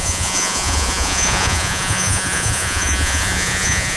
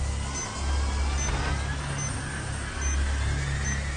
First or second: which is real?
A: second